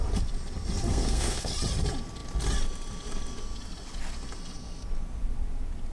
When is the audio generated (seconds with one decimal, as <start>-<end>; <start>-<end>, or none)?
0.9-1.5

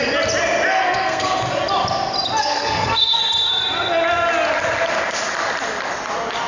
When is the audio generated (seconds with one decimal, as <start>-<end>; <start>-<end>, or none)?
0.7-1.4; 2.4-3.2

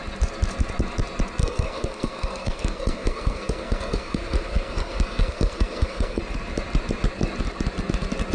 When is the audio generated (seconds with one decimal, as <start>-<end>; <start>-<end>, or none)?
1.4-6.2

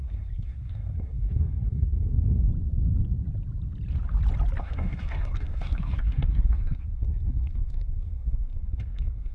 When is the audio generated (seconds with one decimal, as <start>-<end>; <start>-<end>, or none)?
0.0-2.5; 4.6-9.3

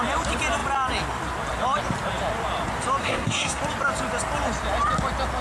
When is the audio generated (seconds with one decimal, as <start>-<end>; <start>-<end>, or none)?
3.0-3.6

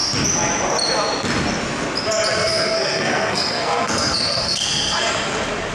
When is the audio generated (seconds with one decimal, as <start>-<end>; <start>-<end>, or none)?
2.4-5.1

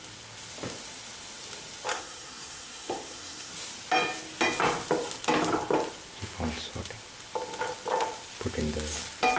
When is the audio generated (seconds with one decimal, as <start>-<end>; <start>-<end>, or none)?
1.9-3.5